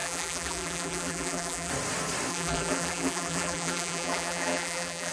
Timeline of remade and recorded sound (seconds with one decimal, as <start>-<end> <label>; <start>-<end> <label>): 0.0-1.7 remade; 1.7-2.3 recorded; 2.3-5.1 remade